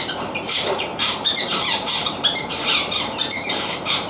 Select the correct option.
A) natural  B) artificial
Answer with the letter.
B